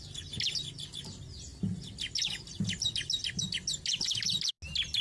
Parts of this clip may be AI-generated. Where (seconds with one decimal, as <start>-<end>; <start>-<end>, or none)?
none